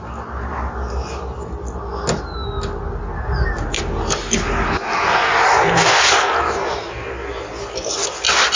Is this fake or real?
real